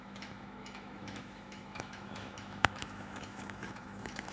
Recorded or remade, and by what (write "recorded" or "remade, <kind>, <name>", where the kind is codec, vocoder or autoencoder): remade, autoencoder, DAC-VAE